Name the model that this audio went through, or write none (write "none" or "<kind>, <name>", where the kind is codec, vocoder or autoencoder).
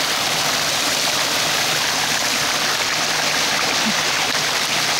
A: none